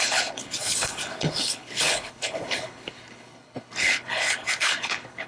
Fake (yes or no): yes